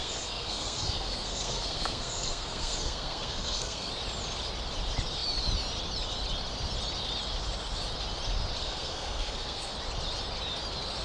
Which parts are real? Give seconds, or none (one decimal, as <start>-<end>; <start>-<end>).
3.9-8.6; 9.7-11.0